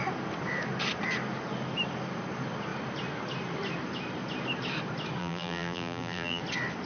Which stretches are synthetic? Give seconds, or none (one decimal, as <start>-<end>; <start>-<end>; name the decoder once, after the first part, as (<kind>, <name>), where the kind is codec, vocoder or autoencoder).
5.2-6.4 (vocoder, BigVGAN v2)